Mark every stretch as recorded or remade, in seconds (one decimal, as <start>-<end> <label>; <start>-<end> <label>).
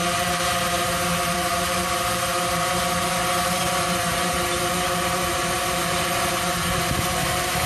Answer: 0.0-7.7 remade